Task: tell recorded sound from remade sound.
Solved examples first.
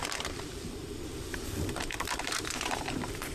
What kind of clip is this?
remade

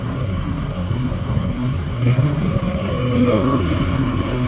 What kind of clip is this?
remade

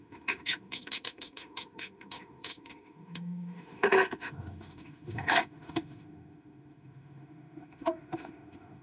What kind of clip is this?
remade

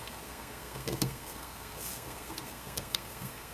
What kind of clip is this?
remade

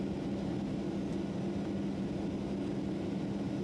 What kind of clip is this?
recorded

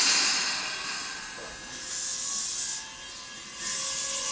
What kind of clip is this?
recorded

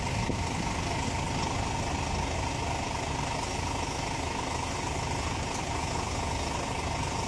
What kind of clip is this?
recorded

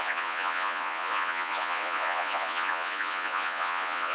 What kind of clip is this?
remade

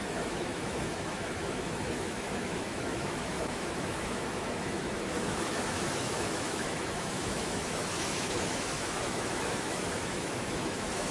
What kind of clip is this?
remade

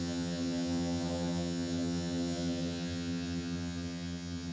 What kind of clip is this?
remade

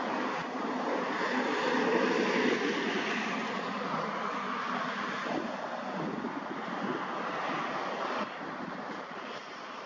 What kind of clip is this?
recorded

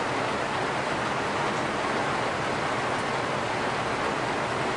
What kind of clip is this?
recorded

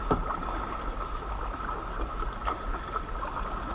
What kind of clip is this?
recorded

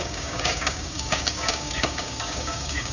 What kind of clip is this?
remade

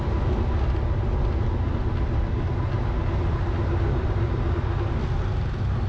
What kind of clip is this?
recorded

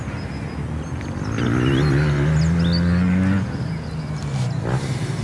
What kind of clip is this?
recorded